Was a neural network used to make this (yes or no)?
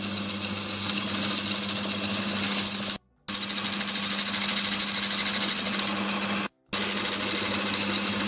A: no